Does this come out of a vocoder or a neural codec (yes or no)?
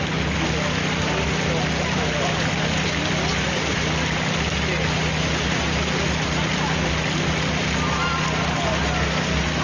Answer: no